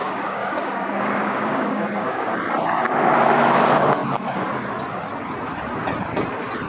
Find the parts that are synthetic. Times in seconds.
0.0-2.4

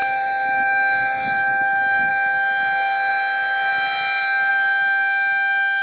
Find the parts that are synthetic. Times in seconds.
none

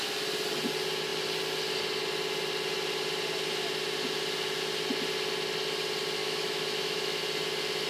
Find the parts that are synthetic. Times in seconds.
6.2-7.2

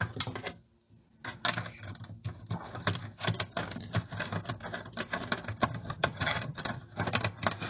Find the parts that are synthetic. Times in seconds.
5.6-6.8

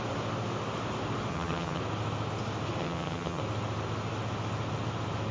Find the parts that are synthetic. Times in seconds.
1.3-1.8; 2.8-3.4